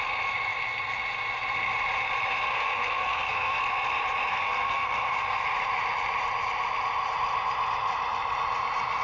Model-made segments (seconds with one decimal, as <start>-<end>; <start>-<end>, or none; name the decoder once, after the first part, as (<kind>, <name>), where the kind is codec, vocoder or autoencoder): 2.5-3.6 (codec, SNAC); 4.3-5.4